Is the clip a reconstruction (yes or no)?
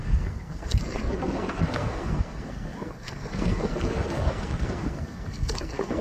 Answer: yes